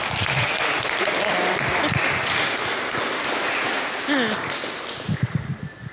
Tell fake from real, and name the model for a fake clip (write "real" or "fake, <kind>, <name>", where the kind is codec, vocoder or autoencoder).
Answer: real